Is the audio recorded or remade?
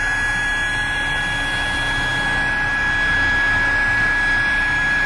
recorded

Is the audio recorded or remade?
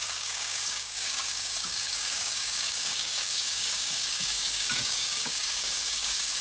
remade